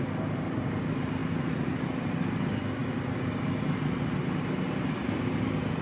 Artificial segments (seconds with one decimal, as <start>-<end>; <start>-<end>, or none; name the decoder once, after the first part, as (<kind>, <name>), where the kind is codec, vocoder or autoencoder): none